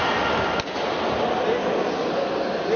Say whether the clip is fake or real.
real